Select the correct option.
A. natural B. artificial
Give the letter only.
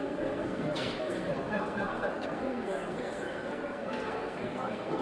B